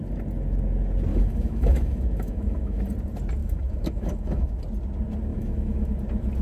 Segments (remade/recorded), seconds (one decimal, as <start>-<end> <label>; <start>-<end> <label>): 0.0-1.1 recorded; 1.1-2.8 remade; 2.8-3.4 recorded; 3.4-4.6 remade; 4.6-5.3 recorded; 5.3-5.9 remade; 5.9-6.4 recorded